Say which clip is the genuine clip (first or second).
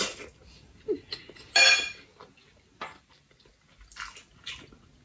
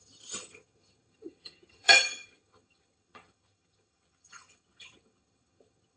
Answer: first